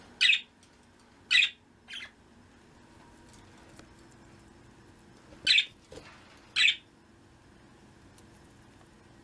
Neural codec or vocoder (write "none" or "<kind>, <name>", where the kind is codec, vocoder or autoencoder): none